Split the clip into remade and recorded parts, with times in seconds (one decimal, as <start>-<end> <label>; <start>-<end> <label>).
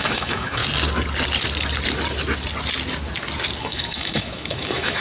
0.0-0.6 remade; 0.6-3.6 recorded; 3.6-5.0 remade